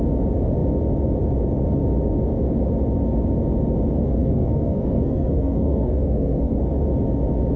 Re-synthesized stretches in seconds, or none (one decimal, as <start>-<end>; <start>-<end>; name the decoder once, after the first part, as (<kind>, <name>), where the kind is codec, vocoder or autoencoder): 4.2-6.6 (codec, SNAC)